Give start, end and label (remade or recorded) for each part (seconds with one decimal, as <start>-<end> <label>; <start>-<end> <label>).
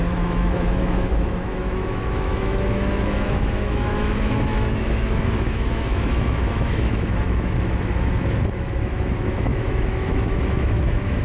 0.0-11.2 remade